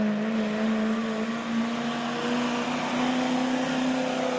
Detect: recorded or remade recorded